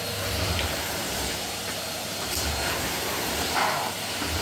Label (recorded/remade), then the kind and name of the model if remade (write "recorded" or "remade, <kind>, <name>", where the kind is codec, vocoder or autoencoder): remade, vocoder, BigVGAN v2